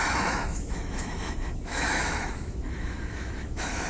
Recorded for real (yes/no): no